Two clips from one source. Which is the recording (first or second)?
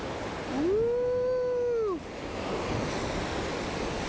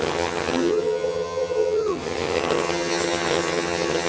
first